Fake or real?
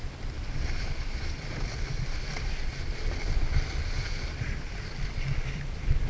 real